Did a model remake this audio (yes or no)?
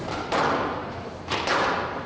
yes